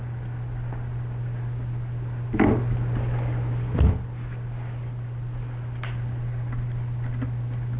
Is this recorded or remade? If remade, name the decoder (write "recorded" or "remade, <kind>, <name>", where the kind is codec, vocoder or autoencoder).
recorded